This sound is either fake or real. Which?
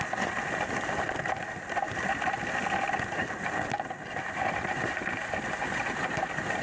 real